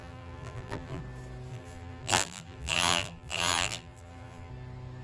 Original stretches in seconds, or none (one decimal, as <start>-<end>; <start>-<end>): 1.0-1.5; 4.5-5.0